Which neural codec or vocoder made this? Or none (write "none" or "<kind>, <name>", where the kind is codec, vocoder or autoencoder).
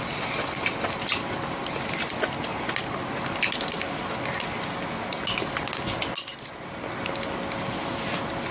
none